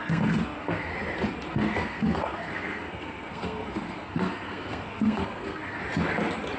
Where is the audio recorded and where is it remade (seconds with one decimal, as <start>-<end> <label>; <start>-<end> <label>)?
0.0-0.9 remade; 0.9-1.5 recorded; 1.5-5.8 remade; 5.8-6.6 recorded